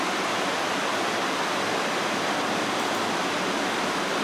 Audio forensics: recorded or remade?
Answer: recorded